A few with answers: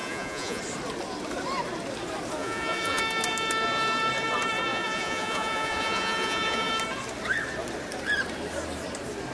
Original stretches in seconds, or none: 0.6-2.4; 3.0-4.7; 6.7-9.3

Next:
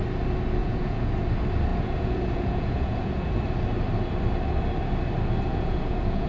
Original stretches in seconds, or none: 0.0-0.6; 1.1-1.7; 3.4-5.5